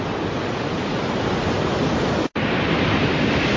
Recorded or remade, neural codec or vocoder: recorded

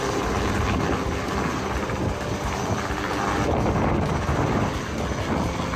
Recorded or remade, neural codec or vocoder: recorded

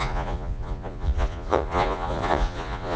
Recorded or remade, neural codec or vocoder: remade, vocoder, Vocos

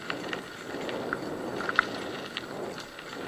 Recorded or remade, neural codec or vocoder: recorded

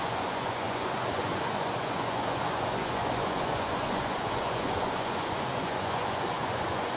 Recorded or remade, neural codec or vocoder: remade, vocoder, Vocos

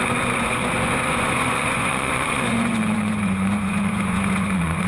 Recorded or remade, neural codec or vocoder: remade, vocoder, Vocos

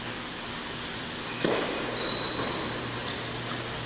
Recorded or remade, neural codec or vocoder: recorded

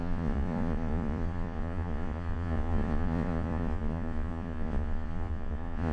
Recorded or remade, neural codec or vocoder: remade, vocoder, Vocos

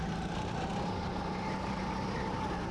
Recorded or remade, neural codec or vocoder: recorded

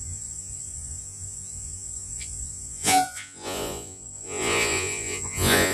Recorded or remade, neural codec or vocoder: remade, vocoder, Vocos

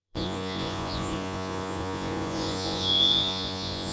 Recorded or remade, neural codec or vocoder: remade, vocoder, Vocos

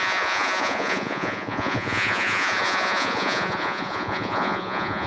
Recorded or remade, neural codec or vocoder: remade, vocoder, Vocos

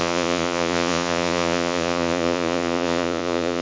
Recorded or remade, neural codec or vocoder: remade, vocoder, Vocos